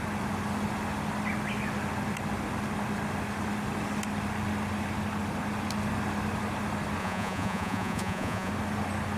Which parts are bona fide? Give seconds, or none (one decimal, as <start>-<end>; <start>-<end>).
0.0-7.0; 8.5-9.2